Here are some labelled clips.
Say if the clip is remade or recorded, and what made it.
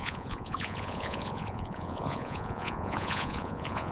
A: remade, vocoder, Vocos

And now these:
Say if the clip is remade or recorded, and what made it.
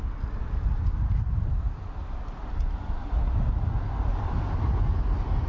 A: recorded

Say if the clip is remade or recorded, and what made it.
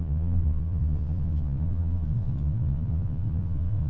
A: remade, vocoder, Vocos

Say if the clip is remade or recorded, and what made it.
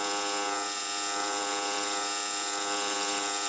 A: remade, vocoder, Vocos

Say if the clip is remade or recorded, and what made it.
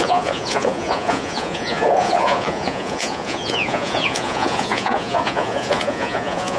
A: remade, vocoder, Vocos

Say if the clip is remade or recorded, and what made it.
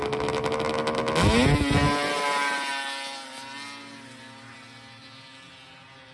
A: recorded